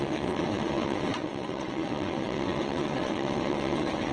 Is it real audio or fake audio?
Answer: fake